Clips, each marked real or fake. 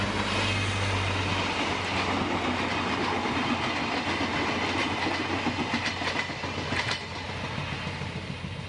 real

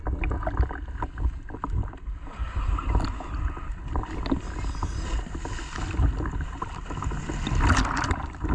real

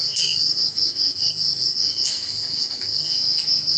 fake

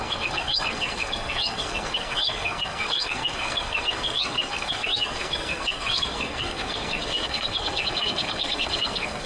fake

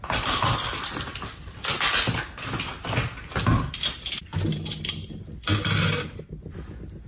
real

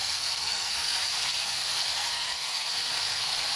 fake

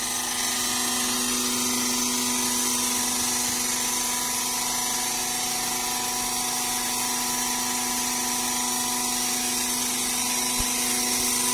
real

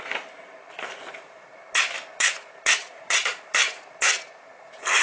real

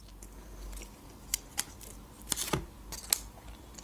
real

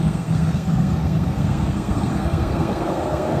fake